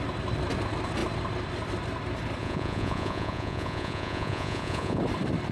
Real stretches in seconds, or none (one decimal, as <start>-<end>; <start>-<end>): 0.0-2.4; 5.0-5.5